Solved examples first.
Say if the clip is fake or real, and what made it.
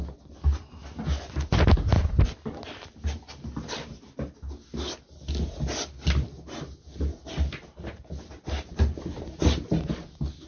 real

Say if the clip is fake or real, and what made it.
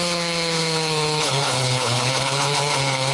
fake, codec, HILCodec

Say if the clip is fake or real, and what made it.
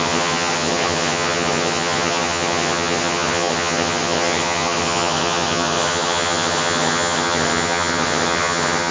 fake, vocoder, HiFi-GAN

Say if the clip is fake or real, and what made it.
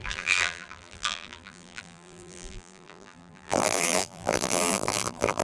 fake, vocoder, BigVGAN v2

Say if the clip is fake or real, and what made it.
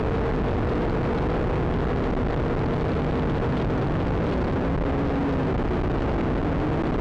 real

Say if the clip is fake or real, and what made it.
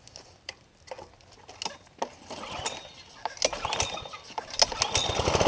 real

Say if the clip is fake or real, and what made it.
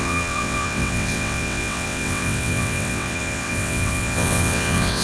fake, vocoder, WaveNeXt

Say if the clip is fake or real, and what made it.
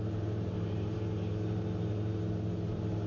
fake, vocoder, BigVGAN v2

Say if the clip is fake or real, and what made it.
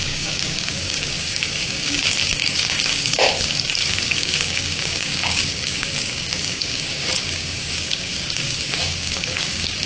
fake, codec, DAC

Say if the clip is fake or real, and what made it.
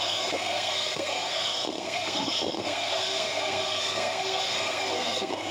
fake, codec, SNAC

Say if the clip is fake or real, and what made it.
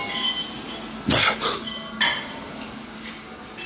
real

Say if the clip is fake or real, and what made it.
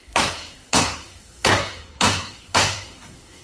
fake, codec, SNAC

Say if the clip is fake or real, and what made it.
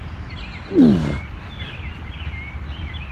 real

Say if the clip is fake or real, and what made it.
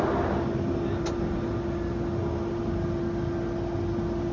real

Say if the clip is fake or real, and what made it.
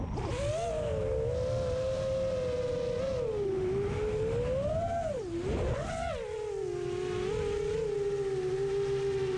real